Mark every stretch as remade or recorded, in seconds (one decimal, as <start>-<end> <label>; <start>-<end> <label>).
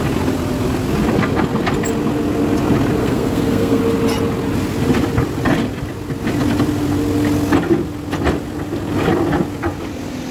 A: 0.0-3.0 recorded; 3.0-3.8 remade; 3.8-10.3 recorded